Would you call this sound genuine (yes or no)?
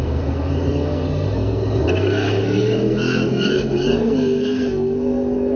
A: no